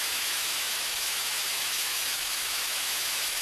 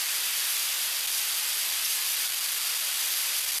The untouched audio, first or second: second